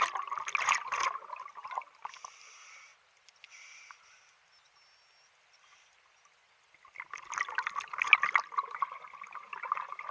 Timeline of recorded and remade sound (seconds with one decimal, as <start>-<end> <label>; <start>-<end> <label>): 0.0-10.1 recorded